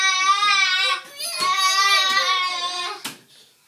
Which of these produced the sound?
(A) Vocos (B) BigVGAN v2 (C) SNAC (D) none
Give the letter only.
D